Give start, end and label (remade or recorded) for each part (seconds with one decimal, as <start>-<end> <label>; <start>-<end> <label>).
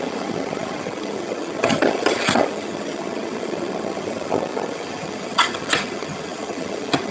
0.0-7.1 remade